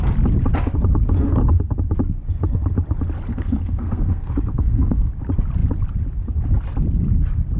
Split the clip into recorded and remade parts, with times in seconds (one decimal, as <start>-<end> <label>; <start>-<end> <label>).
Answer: 0.0-3.3 recorded; 3.3-5.1 remade; 5.1-7.6 recorded